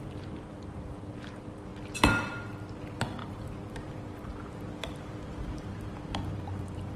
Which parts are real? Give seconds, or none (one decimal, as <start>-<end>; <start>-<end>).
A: 1.7-2.5